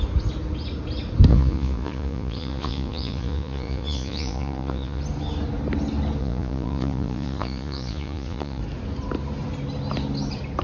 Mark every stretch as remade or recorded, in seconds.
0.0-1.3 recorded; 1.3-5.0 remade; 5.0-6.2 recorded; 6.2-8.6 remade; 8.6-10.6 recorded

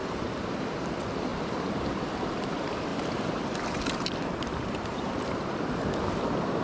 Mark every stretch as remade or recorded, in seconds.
0.0-0.9 remade; 0.9-1.3 recorded; 1.3-1.8 remade; 1.8-2.9 recorded; 2.9-6.6 remade

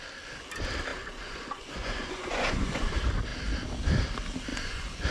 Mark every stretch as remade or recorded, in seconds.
0.0-0.9 recorded; 0.9-2.9 remade; 2.9-4.5 recorded; 4.5-5.1 remade

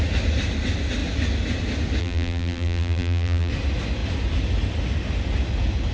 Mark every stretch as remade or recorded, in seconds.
0.0-2.0 recorded; 2.0-3.5 remade; 3.5-5.9 recorded

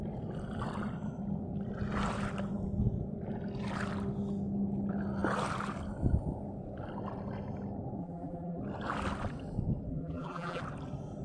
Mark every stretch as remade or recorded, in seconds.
0.0-8.0 recorded; 8.0-8.6 remade; 8.6-9.9 recorded; 9.9-10.6 remade; 10.6-11.2 recorded

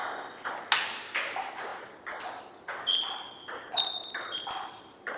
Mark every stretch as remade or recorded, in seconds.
0.0-0.5 remade; 0.5-5.2 recorded

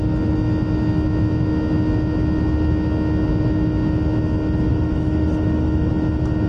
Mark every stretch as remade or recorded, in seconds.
0.0-4.7 recorded; 4.7-5.9 remade; 5.9-6.5 recorded